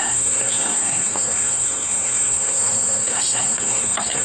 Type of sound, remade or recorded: remade